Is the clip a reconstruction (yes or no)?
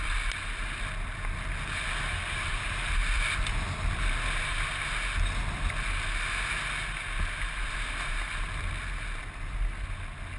no